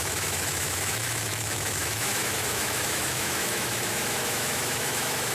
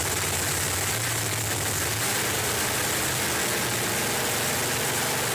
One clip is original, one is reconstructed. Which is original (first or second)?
second